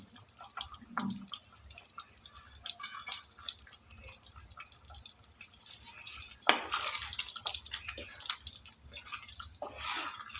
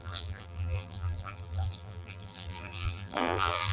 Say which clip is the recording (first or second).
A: first